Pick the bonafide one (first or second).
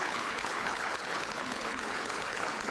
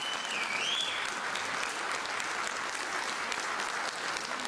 second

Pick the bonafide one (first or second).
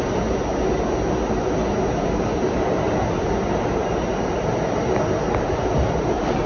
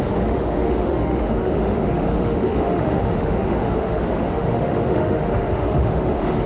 first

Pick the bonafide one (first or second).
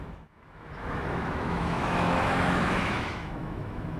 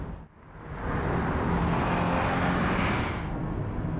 second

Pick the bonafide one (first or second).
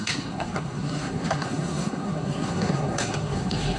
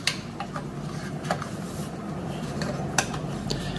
second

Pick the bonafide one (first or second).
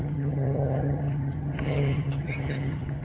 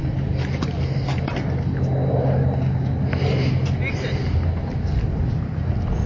second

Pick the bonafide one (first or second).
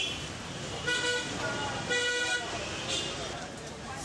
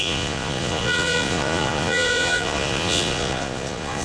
first